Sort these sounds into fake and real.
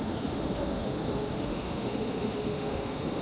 fake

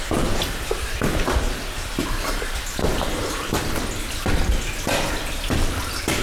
real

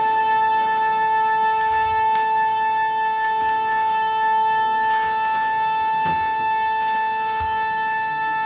fake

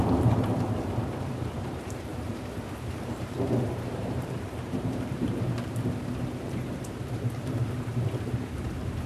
fake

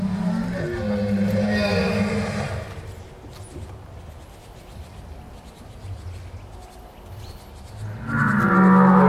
real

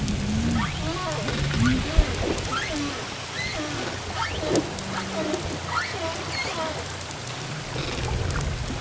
real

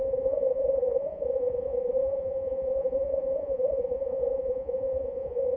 fake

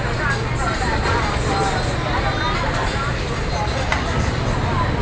real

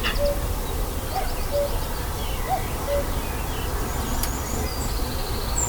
real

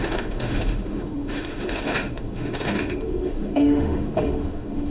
fake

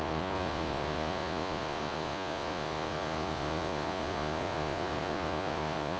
fake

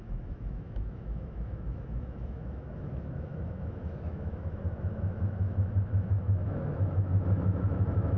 fake